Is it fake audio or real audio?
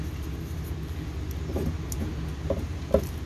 real